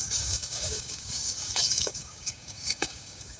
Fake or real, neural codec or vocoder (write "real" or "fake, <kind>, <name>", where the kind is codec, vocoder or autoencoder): fake, codec, DAC